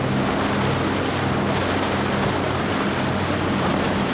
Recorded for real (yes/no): yes